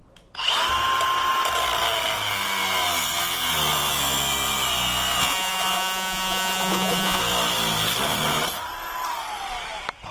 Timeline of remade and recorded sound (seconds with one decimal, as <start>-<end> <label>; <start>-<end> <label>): 0.0-5.2 recorded; 5.2-7.2 remade; 7.2-10.1 recorded

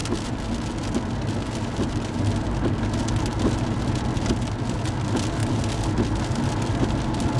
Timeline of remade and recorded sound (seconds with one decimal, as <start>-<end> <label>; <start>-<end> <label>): 0.0-7.4 recorded

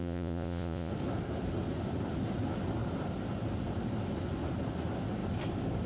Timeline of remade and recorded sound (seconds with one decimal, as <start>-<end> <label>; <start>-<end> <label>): 0.0-0.9 remade; 0.9-5.9 recorded

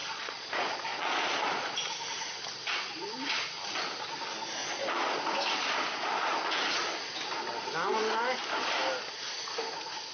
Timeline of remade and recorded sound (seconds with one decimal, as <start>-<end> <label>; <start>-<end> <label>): 0.0-1.8 remade; 1.8-4.6 recorded; 4.6-5.2 remade; 5.2-10.1 recorded

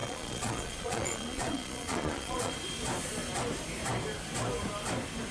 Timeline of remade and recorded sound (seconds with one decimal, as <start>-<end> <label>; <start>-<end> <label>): 0.0-2.5 remade; 2.5-5.3 recorded

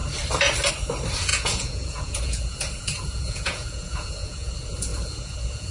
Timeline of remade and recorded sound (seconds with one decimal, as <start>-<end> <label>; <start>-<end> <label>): 0.0-1.3 recorded; 1.3-4.5 remade; 4.5-4.9 recorded; 4.9-5.7 remade

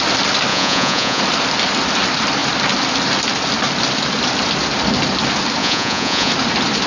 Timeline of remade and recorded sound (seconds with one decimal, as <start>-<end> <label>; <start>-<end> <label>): 0.0-0.5 recorded; 0.5-1.2 remade; 1.2-5.6 recorded; 5.6-6.3 remade; 6.3-6.9 recorded